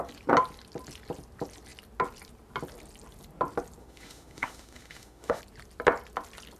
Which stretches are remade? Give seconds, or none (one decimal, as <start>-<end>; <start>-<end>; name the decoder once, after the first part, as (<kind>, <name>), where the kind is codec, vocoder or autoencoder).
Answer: 3.8-5.4 (autoencoder, DAC-VAE)